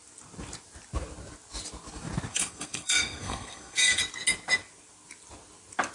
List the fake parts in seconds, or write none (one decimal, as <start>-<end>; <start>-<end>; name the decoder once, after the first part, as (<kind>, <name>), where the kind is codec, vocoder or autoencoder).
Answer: 2.3-4.0 (codec, SNAC)

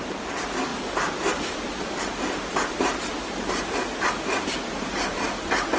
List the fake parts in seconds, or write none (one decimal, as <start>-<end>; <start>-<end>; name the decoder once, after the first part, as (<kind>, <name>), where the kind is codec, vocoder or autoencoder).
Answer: none

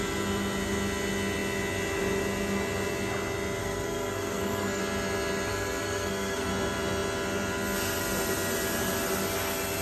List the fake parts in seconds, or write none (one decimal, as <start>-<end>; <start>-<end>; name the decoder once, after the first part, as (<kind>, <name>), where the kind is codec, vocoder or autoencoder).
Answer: 3.6-4.8 (codec, SNAC); 5.5-6.5

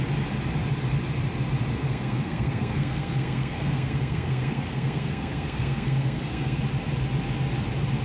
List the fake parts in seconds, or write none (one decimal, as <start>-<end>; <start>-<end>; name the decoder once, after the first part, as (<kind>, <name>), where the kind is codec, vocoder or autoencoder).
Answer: 1.8-6.6 (codec, SNAC)

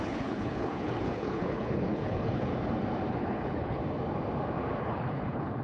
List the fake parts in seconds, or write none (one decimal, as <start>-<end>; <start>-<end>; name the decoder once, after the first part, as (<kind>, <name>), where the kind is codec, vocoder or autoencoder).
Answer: 0.0-2.5 (codec, HILCodec); 3.1-3.8; 4.8-5.6

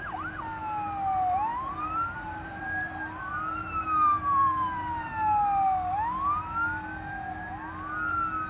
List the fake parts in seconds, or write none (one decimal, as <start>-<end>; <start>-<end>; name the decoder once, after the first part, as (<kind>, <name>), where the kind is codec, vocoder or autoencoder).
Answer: 1.5-2.9 (vocoder, BigVGAN v2); 3.6-5.1

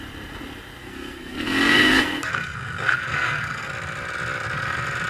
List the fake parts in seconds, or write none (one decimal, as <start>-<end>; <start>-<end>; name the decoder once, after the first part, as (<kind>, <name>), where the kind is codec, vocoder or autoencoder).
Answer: 0.8-3.7 (codec, SNAC)

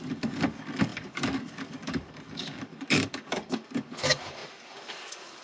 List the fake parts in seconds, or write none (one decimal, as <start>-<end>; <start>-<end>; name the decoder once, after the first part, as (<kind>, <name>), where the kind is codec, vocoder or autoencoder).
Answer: 0.0-5.4 (codec, DAC)